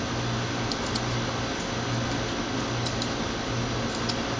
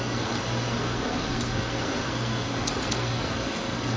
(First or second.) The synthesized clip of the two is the second